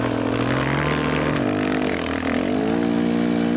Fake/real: real